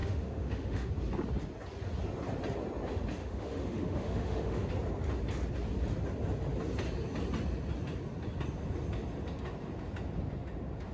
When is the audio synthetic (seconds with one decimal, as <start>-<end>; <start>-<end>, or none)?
0.0-0.9; 3.2-4.7